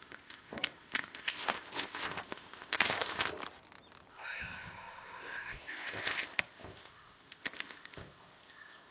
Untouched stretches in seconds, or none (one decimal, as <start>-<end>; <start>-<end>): 3.3-4.1